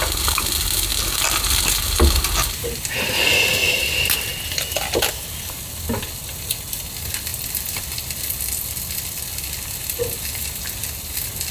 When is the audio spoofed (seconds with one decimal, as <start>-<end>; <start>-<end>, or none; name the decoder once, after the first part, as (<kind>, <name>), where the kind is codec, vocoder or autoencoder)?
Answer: none